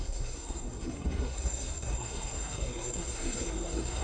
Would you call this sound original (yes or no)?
no